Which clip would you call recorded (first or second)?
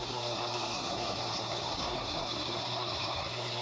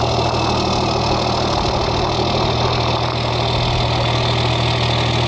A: second